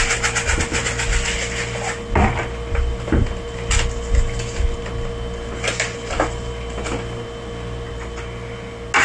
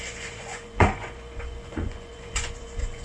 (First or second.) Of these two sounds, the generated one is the second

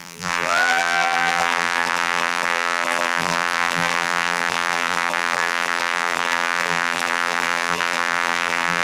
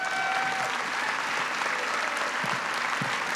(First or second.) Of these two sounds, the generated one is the first